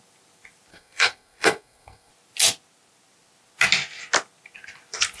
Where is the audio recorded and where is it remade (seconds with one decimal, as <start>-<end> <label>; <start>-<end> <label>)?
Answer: 0.0-0.7 recorded; 0.7-2.1 remade; 2.1-5.2 recorded